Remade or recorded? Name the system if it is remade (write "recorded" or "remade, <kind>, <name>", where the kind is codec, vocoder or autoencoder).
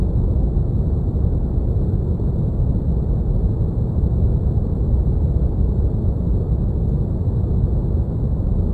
recorded